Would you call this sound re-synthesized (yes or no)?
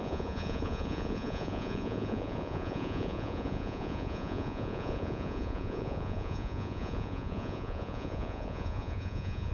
yes